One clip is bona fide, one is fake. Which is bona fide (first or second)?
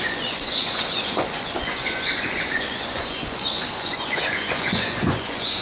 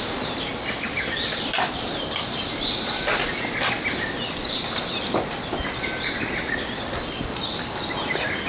second